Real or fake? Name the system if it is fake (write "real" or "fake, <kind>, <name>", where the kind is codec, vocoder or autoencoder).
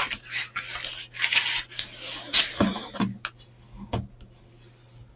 real